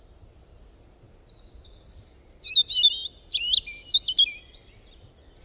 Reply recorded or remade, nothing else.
recorded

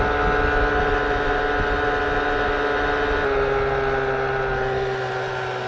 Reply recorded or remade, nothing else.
recorded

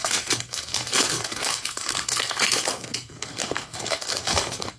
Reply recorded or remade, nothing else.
remade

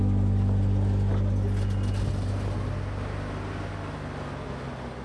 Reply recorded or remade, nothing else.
recorded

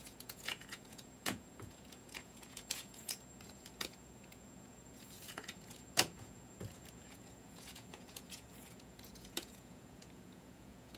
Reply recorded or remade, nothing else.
remade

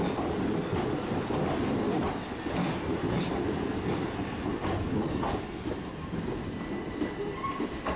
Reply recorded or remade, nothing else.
recorded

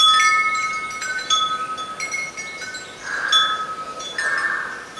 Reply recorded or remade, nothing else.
recorded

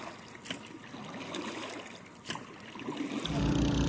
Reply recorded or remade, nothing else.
recorded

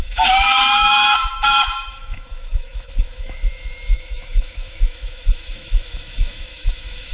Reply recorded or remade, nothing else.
remade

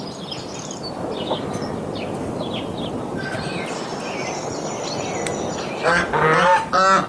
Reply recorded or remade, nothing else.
recorded